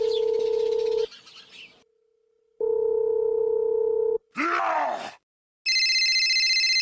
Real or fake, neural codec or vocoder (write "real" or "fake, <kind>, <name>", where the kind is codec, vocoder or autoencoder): real